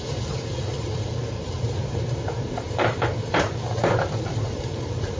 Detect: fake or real fake